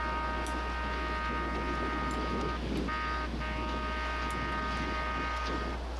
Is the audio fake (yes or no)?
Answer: no